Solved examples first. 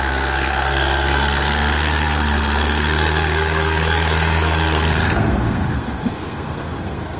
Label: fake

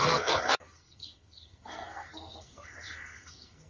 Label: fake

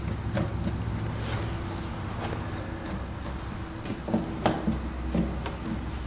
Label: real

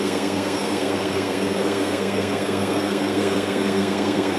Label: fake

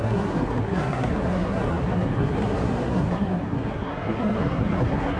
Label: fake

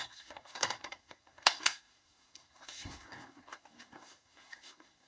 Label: fake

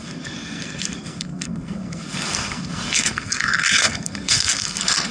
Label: fake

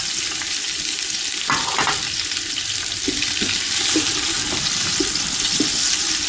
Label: real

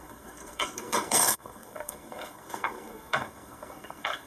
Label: fake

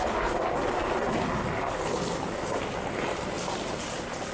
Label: real